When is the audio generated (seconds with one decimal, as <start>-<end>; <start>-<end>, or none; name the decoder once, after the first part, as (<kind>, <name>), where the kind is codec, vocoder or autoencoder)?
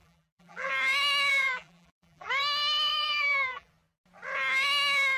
0.0-0.7 (vocoder, BigVGAN v2); 1.3-2.3; 2.9-3.7